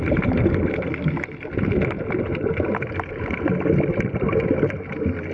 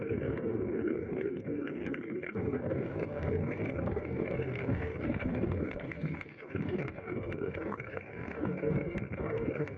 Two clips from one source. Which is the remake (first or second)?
second